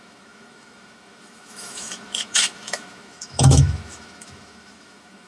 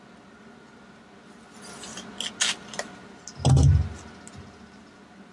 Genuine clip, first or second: second